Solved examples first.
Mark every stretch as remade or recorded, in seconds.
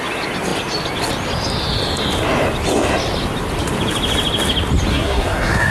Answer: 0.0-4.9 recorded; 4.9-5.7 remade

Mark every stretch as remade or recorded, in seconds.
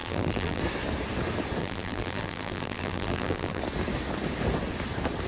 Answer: 0.0-0.6 remade; 0.6-1.6 recorded; 1.6-3.6 remade; 3.6-5.3 recorded